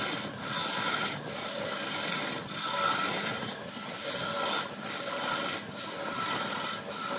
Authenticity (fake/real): real